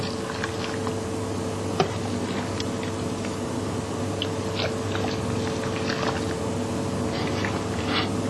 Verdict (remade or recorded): recorded